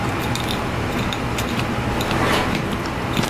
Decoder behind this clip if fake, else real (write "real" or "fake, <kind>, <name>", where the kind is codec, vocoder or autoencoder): real